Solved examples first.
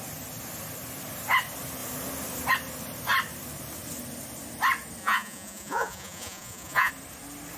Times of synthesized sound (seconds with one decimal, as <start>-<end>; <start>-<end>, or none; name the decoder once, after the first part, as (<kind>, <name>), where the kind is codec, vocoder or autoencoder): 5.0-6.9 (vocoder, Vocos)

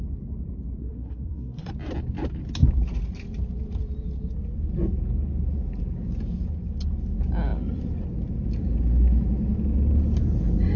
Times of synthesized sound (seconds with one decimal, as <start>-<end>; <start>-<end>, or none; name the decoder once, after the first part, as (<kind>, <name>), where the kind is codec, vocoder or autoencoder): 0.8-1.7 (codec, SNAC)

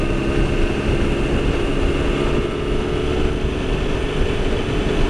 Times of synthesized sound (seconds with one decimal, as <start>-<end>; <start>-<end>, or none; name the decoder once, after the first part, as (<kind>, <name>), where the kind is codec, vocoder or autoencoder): none

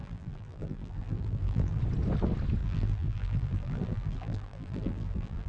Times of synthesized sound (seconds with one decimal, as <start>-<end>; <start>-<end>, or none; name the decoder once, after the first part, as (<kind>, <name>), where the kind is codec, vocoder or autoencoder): 0.0-1.8 (vocoder, BigVGAN v2); 2.6-5.5

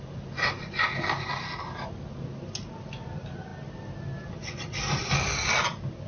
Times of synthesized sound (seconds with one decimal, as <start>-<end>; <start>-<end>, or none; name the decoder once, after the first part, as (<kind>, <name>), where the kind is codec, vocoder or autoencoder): none

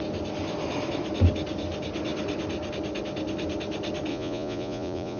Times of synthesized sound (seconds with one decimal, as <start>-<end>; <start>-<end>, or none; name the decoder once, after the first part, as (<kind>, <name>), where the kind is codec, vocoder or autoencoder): 4.1-5.2 (vocoder, Vocos)

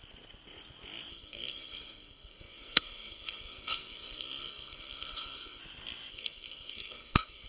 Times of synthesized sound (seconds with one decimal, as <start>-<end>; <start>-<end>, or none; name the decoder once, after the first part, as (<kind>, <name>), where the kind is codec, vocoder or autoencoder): 1.1-5.6 (codec, SNAC); 6.1-7.5

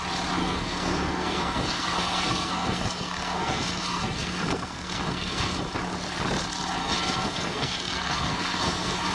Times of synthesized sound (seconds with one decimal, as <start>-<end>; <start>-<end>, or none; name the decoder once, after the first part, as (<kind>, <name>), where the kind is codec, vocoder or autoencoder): 0.4-5.6 (codec, SNAC); 6.8-9.1